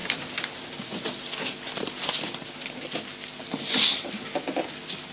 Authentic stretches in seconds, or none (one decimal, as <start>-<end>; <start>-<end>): 0.0-5.1